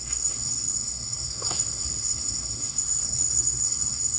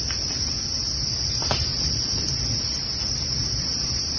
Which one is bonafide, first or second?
second